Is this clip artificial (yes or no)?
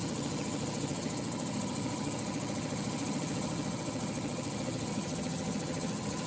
yes